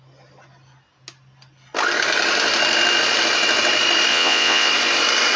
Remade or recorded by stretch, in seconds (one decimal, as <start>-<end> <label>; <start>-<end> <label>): 0.0-4.1 recorded; 4.1-4.7 remade; 4.7-5.4 recorded